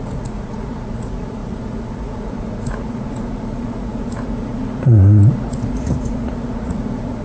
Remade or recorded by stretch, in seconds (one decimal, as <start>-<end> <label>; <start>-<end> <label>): 0.0-7.2 remade